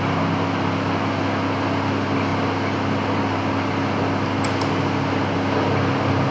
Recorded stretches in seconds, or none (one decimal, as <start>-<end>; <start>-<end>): 0.0-6.3